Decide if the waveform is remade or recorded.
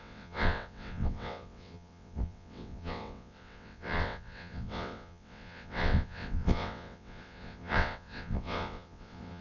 remade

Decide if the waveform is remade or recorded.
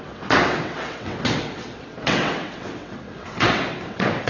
remade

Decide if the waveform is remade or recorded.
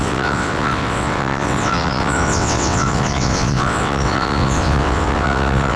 remade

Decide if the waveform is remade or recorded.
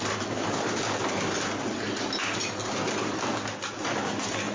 recorded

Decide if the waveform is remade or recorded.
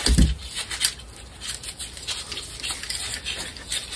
recorded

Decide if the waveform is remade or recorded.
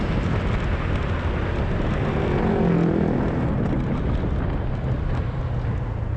recorded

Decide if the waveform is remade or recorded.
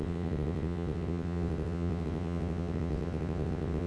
remade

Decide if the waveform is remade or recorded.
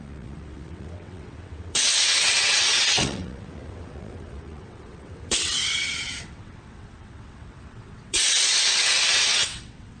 remade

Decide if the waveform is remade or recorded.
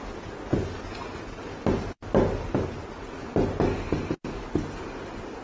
recorded